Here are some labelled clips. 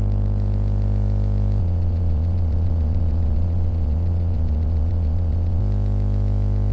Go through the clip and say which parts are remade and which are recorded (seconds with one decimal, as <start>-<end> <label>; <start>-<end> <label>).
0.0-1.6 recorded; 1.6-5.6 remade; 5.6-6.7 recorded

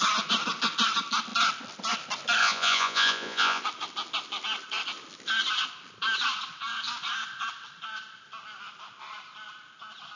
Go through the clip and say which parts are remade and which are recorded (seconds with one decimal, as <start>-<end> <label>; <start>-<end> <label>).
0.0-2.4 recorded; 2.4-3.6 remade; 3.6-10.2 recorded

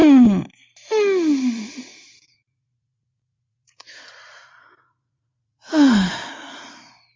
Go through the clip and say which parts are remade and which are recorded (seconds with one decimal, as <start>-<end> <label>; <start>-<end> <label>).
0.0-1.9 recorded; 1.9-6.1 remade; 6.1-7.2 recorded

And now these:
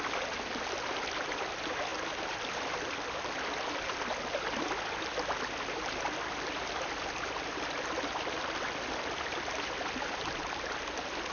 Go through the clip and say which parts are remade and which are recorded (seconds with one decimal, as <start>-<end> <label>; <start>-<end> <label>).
0.0-11.3 recorded

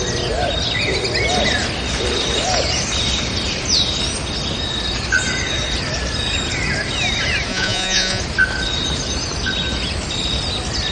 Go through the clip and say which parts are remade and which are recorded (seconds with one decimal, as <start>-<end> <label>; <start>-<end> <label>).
0.0-7.5 recorded; 7.5-8.2 remade; 8.2-10.9 recorded

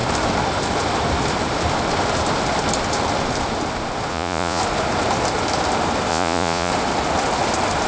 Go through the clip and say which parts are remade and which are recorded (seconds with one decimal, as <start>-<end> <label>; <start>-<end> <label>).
0.0-4.1 recorded; 4.1-4.6 remade; 4.6-6.1 recorded; 6.1-6.7 remade; 6.7-7.9 recorded

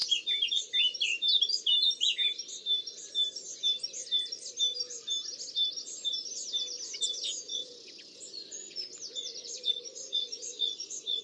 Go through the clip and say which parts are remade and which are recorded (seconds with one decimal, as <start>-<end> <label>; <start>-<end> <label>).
0.0-7.5 recorded; 7.5-11.2 remade

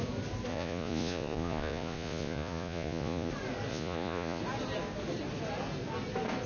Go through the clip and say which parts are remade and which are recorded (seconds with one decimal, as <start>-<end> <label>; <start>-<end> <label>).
0.0-0.5 recorded; 0.5-3.3 remade; 3.3-3.7 recorded; 3.7-4.4 remade; 4.4-6.5 recorded